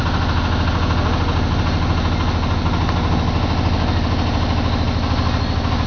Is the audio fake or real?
real